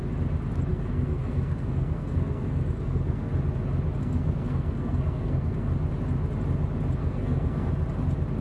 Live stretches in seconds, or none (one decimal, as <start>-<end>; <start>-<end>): 0.0-0.7; 3.3-4.0; 5.7-7.0; 7.7-8.4